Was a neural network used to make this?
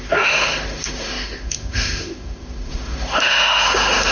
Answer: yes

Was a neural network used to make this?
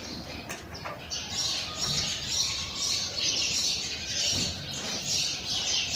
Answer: no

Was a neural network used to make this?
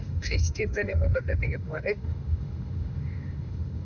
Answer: yes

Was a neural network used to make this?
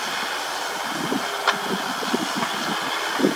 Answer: no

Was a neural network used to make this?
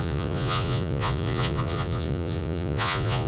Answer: yes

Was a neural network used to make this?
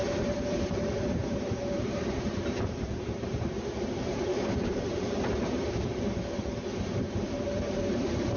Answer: yes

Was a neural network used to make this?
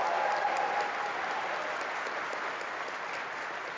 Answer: no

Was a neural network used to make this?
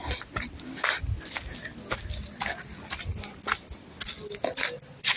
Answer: no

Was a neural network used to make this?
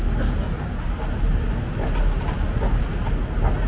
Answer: no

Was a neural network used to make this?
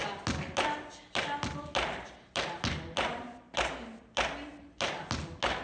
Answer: no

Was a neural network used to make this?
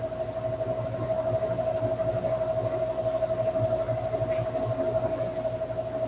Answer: no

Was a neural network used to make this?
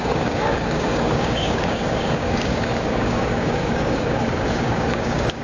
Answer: yes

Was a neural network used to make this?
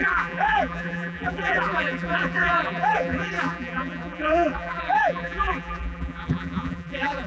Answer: yes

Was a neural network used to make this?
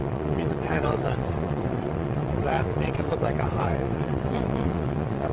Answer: yes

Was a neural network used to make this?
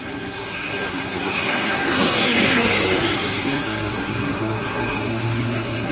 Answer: yes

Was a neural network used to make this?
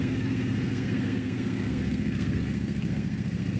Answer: yes